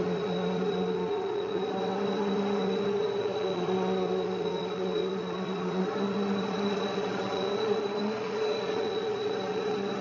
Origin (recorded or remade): remade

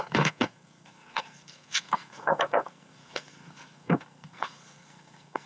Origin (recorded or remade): remade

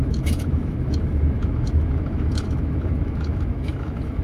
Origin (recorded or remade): remade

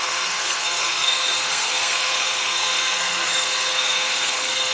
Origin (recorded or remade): remade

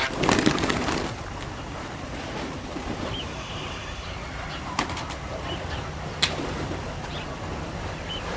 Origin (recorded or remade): remade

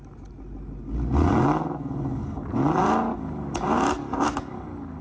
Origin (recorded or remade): recorded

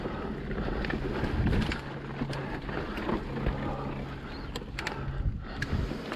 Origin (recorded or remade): recorded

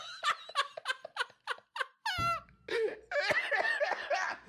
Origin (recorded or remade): recorded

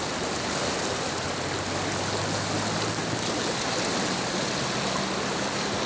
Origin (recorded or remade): recorded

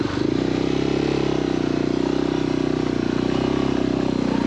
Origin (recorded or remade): recorded